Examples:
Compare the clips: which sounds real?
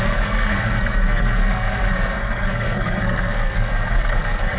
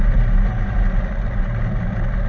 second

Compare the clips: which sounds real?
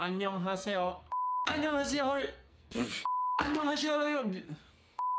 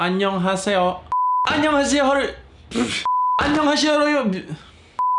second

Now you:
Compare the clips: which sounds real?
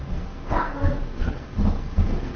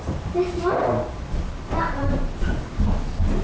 second